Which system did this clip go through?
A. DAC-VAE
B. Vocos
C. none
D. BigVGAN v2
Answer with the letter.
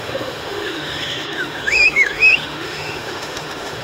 A